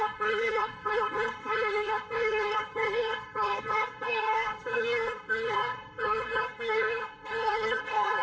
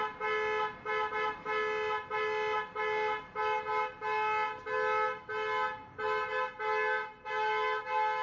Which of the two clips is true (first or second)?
second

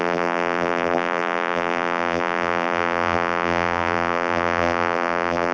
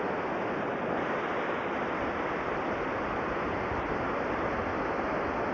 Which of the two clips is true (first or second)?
second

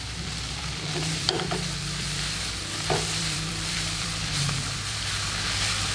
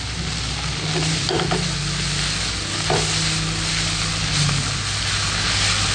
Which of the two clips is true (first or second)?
second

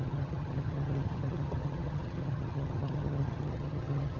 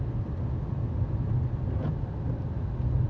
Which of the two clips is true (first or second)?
second